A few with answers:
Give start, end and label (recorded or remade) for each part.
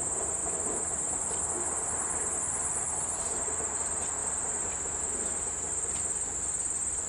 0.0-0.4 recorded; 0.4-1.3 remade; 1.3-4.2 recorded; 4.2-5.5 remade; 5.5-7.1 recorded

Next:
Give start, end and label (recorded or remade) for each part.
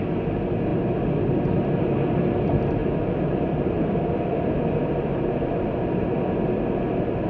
0.0-2.8 recorded; 2.8-5.2 remade; 5.2-7.3 recorded